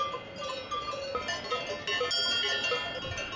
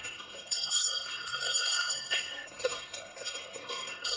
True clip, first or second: first